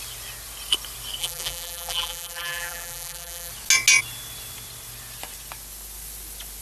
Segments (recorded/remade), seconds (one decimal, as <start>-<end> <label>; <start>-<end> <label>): 0.0-1.2 recorded; 1.2-3.5 remade; 3.5-6.6 recorded